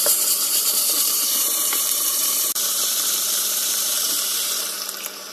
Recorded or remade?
remade